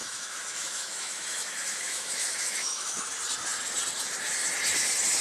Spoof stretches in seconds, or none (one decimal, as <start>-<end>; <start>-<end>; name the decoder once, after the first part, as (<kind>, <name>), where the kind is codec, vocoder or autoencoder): 0.0-3.1 (autoencoder, DAC-VAE)